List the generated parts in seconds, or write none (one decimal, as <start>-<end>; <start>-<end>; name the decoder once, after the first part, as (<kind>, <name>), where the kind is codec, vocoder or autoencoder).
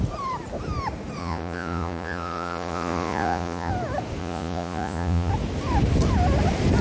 1.2-3.7 (vocoder, Vocos); 4.2-5.3